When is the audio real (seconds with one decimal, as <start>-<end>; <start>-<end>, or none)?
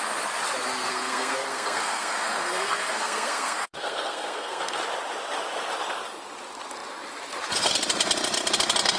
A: 0.0-0.9; 4.8-9.0